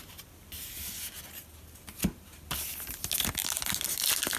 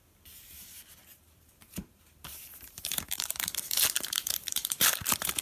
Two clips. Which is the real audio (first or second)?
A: first